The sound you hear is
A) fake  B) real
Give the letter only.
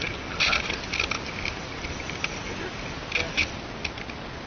B